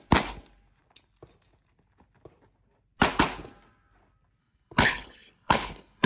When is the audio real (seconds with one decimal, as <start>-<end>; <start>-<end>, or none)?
0.0-4.4